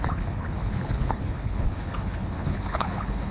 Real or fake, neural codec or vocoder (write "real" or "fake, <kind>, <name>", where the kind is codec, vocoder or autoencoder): fake, codec, HILCodec